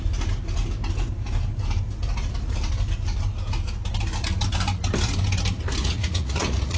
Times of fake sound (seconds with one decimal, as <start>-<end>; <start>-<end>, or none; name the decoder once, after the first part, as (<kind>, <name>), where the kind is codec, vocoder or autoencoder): 5.8-6.8 (vocoder, Vocos)